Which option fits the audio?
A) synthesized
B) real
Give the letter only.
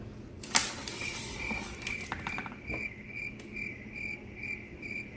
B